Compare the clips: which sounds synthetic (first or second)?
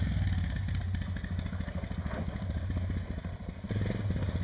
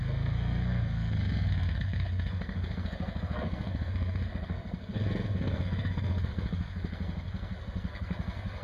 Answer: second